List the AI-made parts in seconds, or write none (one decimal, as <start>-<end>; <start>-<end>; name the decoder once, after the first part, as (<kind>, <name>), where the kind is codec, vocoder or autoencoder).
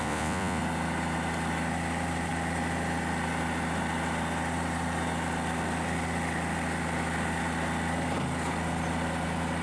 0.0-0.6 (vocoder, Vocos)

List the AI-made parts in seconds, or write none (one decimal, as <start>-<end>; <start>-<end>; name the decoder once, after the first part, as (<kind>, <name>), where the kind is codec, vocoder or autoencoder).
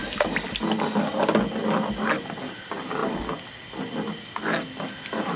none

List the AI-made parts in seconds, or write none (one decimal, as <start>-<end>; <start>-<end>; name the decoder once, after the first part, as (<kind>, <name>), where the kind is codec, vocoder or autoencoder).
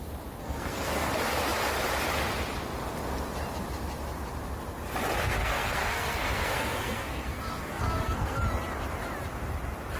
0.4-1.1 (codec, SNAC); 5.2-8.4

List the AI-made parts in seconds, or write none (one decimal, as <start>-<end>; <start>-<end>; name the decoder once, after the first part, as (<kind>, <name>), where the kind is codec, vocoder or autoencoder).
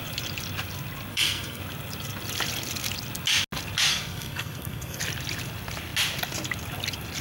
1.1-1.6 (codec, SNAC); 3.9-5.0